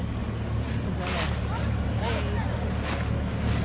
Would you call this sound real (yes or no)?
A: yes